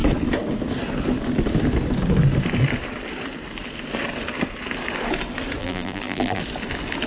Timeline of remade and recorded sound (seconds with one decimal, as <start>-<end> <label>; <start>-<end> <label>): 0.0-5.6 recorded; 5.6-6.4 remade; 6.4-7.1 recorded